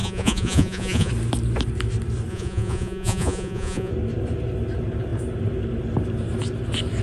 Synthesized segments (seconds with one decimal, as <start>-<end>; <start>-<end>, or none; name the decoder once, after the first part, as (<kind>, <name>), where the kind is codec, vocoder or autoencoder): 0.0-1.1 (vocoder, Vocos); 2.3-3.9